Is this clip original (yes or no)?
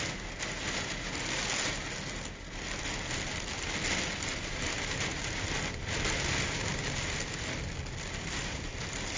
yes